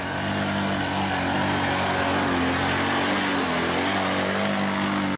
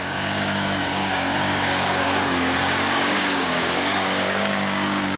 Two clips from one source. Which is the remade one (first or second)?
second